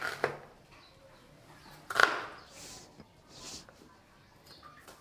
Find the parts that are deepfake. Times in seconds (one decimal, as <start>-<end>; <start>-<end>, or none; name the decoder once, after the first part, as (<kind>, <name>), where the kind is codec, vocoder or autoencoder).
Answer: none